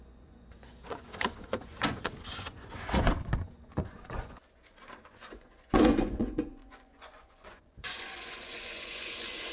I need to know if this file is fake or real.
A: fake